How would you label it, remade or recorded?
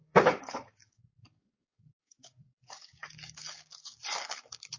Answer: remade